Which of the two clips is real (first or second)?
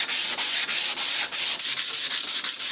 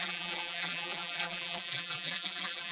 first